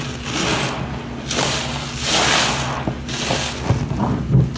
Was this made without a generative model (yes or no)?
yes